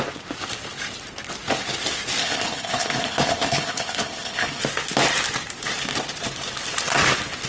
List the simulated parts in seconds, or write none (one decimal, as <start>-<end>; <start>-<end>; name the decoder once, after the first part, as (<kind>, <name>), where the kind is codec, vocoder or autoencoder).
2.2-4.6 (codec, HILCodec)